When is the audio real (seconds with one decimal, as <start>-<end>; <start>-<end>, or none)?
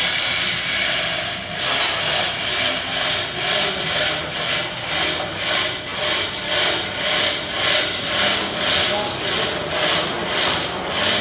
0.0-11.2